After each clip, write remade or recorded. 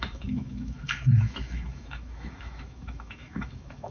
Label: remade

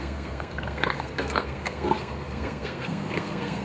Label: remade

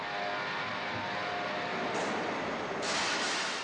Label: recorded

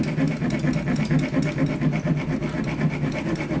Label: recorded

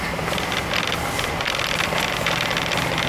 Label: recorded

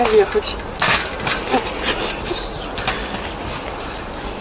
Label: recorded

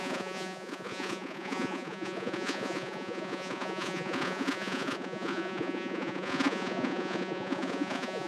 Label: remade